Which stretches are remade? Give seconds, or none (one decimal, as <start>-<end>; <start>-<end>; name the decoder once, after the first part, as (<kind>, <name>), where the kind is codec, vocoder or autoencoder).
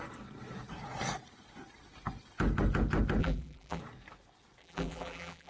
3.2-3.8 (vocoder, BigVGAN v2); 4.6-5.5